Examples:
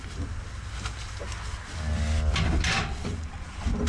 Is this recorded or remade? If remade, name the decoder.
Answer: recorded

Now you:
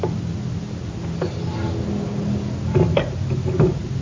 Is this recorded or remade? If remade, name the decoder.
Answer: recorded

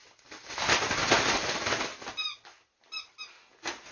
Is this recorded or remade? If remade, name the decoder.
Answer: recorded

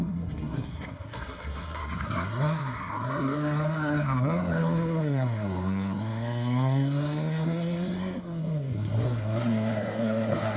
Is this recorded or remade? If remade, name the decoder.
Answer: remade, codec, SNAC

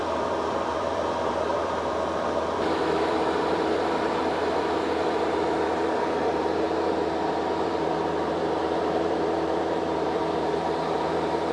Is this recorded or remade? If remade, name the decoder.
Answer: remade, vocoder, BigVGAN v2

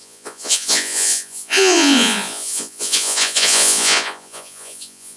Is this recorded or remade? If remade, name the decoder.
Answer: remade, vocoder, Vocos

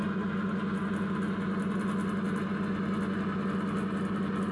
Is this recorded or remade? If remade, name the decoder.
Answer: recorded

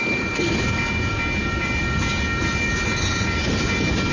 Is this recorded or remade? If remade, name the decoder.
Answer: recorded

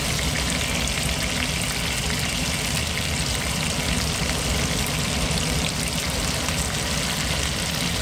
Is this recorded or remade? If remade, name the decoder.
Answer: recorded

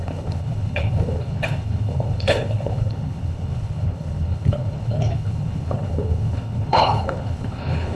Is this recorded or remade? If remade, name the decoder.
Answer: remade, codec, HILCodec